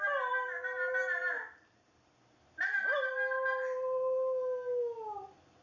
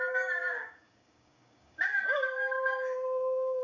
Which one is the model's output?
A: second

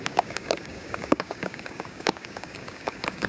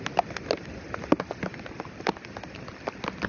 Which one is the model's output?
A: first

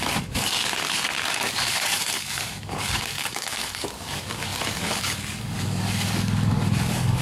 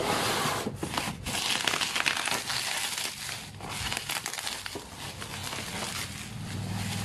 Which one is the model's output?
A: first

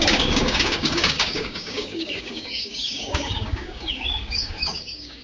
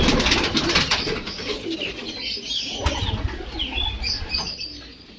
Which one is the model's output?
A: first